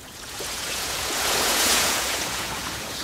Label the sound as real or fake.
fake